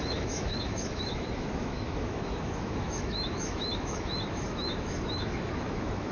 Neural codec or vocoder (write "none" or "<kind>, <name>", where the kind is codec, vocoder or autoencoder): autoencoder, DAC-VAE